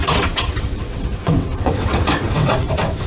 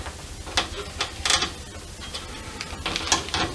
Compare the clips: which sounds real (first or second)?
second